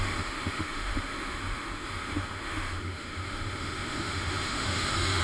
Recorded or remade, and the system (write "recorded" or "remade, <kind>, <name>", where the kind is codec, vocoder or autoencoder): remade, autoencoder, DAC-VAE